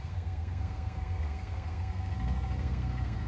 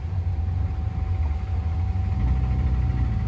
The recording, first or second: second